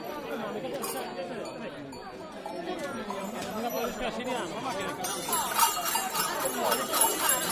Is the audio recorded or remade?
recorded